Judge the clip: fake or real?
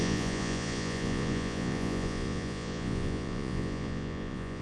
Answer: fake